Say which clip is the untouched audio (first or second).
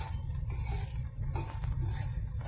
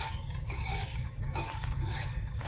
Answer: first